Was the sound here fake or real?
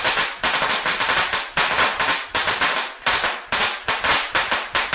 real